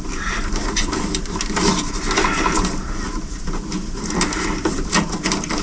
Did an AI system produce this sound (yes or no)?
no